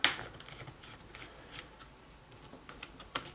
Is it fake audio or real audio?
real